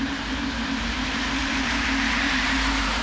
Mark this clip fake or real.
fake